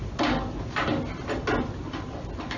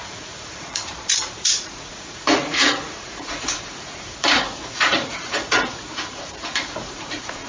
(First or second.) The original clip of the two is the first